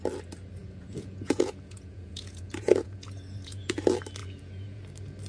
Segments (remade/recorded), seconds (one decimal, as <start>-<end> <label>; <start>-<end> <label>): 0.0-0.6 recorded; 0.6-3.8 remade; 3.8-4.2 recorded; 4.2-4.8 remade; 4.8-5.3 recorded